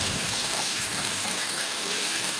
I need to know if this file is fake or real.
fake